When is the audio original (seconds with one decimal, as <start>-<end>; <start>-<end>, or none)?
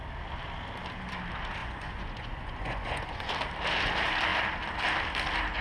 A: 0.0-1.6; 3.3-5.6